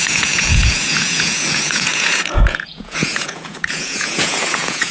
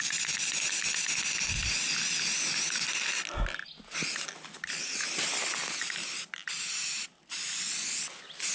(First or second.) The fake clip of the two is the first